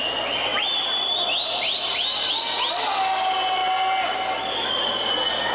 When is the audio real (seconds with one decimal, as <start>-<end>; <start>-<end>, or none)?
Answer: 0.0-5.5